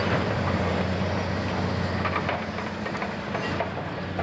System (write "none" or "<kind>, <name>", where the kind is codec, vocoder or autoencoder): none